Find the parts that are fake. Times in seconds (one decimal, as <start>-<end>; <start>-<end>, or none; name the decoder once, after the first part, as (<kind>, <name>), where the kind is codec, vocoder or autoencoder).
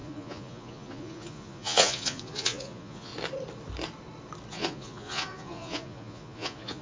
0.0-3.1 (vocoder, Vocos); 4.5-6.8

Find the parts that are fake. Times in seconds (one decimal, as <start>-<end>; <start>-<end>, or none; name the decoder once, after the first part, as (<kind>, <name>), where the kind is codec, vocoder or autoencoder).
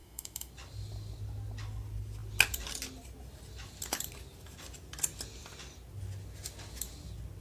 0.0-0.5 (autoencoder, DAC-VAE)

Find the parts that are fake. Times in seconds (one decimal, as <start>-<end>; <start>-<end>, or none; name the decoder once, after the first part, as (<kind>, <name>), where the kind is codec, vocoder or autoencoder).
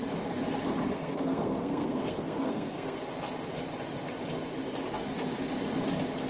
0.9-3.0 (codec, SNAC)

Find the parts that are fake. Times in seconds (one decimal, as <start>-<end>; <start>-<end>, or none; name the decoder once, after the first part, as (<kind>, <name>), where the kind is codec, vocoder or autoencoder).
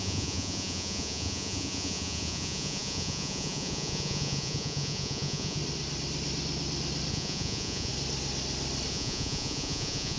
0.0-5.6 (vocoder, Vocos); 7.1-7.9; 8.9-10.2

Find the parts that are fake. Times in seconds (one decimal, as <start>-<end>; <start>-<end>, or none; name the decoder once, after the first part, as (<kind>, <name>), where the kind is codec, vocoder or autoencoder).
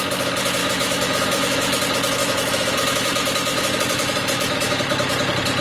0.6-1.8 (autoencoder, DAC-VAE); 2.2-5.1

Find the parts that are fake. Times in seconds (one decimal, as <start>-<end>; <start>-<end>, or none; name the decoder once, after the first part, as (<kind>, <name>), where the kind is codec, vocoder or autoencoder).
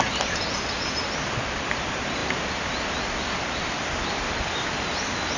none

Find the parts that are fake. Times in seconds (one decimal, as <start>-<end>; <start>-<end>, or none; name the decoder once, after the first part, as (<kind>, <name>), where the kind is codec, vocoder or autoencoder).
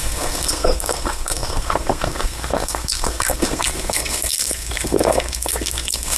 0.0-6.2 (codec, SNAC)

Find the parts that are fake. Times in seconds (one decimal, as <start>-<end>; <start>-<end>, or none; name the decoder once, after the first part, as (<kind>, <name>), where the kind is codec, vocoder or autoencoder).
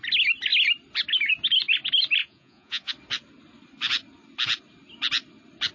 2.2-2.9 (vocoder, Vocos)